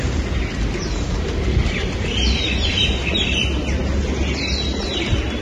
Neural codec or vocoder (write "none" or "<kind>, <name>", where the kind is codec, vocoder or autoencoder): none